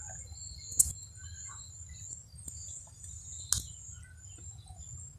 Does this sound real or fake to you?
real